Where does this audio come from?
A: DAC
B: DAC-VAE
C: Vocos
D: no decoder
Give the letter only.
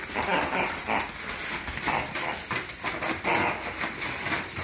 D